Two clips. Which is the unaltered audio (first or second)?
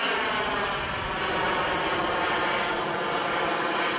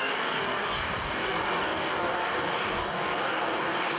first